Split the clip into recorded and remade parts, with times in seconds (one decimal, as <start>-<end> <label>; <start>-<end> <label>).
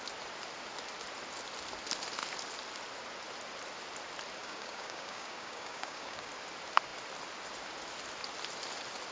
0.0-4.4 recorded; 4.4-6.3 remade; 6.3-9.1 recorded